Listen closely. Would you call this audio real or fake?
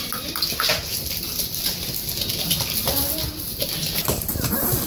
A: real